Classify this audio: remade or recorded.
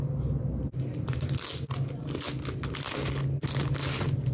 recorded